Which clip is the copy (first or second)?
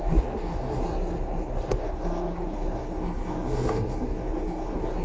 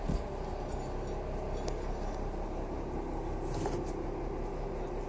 first